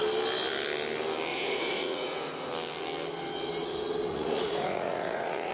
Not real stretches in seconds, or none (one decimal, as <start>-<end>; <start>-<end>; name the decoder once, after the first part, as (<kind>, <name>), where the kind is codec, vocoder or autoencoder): 1.3-2.5 (vocoder, Vocos); 4.1-5.5